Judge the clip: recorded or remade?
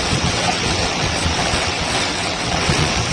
remade